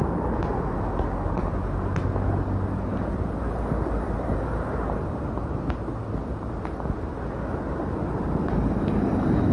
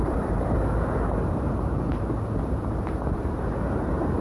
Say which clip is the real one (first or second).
first